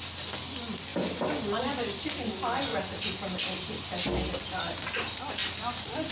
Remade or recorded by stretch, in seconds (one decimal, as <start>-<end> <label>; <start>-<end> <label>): 0.0-6.1 recorded